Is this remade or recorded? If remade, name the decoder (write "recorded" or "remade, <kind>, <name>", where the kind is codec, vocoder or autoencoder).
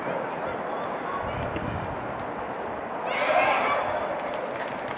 recorded